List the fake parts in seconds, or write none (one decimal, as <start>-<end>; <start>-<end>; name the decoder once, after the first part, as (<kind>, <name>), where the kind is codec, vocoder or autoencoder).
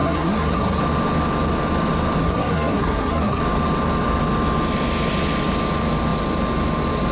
0.0-0.8 (codec, SNAC); 2.2-3.4